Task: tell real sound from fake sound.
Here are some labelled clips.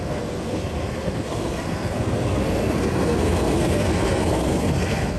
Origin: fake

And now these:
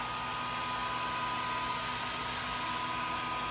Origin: real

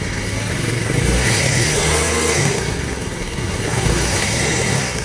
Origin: fake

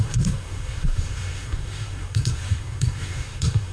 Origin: fake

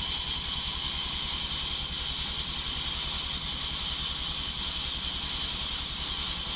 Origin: real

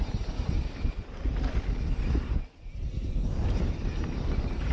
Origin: real